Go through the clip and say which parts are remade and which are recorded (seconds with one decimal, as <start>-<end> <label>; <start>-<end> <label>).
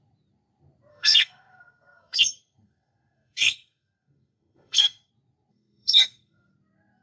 0.0-0.9 recorded; 0.9-5.1 remade; 5.1-5.5 recorded; 5.5-6.5 remade; 6.5-7.0 recorded